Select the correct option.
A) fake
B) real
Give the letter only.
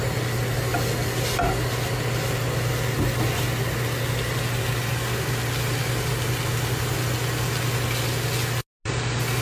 B